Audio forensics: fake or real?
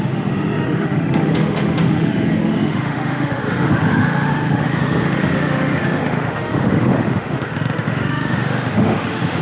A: fake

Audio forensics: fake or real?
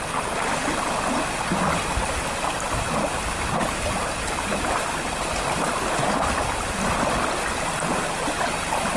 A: real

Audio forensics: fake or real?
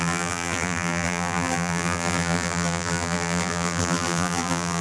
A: fake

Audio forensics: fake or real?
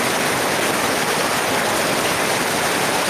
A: real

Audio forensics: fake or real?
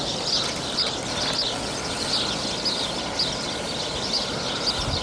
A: real